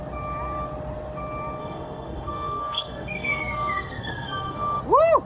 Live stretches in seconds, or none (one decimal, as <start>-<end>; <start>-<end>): 0.0-1.6; 4.8-5.3